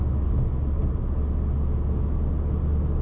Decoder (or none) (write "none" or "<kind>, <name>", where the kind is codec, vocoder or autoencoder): none